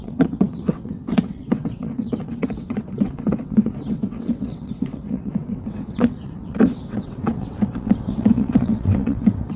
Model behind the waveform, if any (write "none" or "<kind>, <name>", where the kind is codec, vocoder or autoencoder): vocoder, WaveNeXt